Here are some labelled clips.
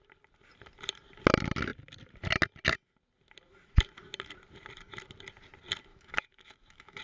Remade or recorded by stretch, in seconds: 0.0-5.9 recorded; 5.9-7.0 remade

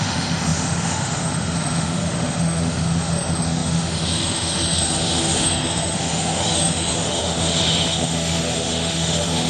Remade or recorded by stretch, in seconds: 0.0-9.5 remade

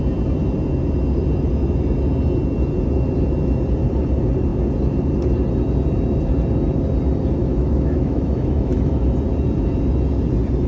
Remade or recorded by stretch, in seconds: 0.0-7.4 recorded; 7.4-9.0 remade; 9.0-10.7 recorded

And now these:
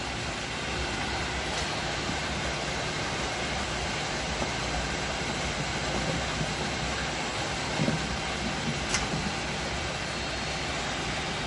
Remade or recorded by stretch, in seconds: 0.0-11.5 recorded